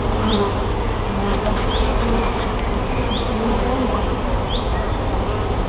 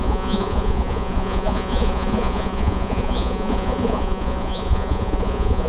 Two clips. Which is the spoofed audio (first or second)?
second